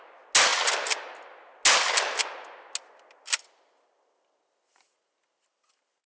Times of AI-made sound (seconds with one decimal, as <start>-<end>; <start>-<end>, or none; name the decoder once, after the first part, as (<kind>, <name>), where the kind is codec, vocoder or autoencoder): none